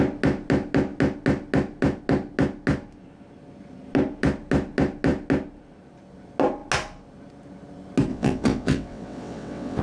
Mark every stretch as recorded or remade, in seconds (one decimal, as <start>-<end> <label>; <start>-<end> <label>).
0.0-8.1 recorded; 8.1-9.8 remade